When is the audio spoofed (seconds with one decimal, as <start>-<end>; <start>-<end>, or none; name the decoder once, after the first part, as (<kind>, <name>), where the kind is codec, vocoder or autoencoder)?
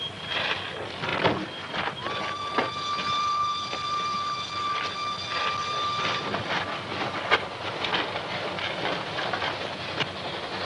none